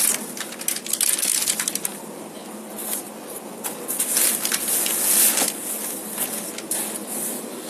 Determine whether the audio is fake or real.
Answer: real